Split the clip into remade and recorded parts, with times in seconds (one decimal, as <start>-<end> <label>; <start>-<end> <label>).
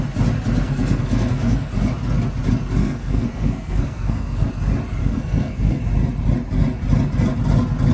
0.0-0.6 recorded; 0.6-1.7 remade; 1.7-2.8 recorded; 2.8-4.5 remade; 4.5-5.0 recorded; 5.0-5.8 remade; 5.8-7.9 recorded